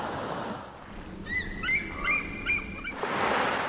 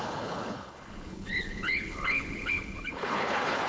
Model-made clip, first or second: second